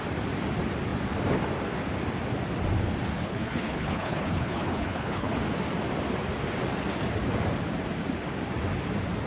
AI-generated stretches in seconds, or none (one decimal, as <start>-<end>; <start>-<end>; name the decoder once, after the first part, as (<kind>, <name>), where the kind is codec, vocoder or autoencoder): 3.2-5.3 (codec, HILCodec)